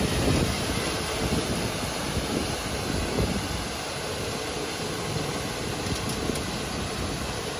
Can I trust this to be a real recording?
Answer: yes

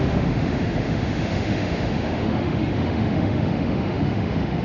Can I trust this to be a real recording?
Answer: no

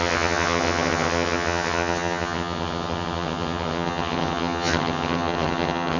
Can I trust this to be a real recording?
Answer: no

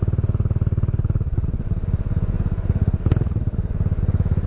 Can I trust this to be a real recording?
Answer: yes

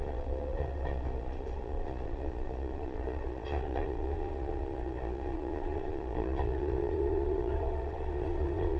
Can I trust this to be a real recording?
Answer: no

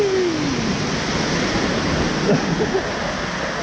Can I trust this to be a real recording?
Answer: yes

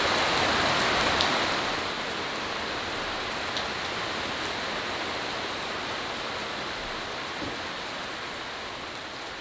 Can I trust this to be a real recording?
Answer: yes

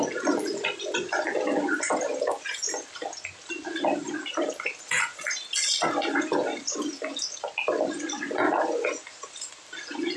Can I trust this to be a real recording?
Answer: yes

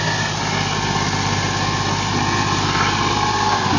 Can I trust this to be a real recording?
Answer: yes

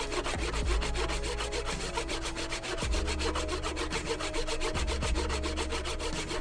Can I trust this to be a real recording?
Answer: yes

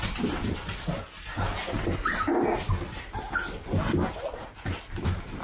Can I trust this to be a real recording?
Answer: yes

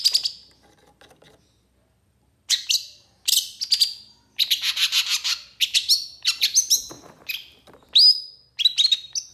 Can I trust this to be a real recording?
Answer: yes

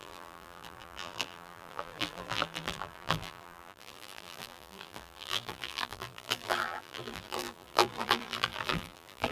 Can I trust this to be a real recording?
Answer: no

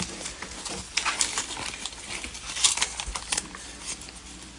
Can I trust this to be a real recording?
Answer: yes